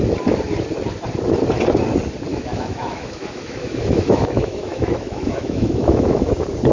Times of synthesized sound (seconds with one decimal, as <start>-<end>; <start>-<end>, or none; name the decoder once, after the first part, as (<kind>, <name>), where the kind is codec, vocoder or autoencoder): 2.3-6.3 (autoencoder, DAC-VAE)